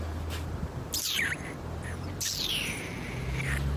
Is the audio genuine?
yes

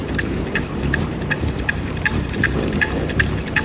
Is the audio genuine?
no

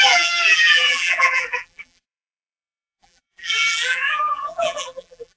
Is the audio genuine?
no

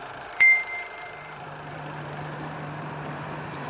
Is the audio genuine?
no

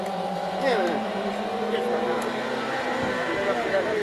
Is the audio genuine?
no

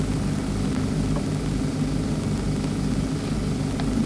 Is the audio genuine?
yes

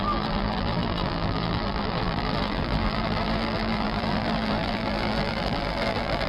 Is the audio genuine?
no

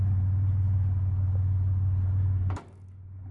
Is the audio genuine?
yes